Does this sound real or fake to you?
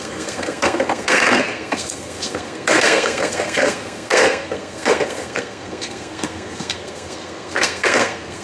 fake